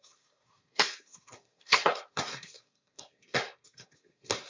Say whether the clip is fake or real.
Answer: fake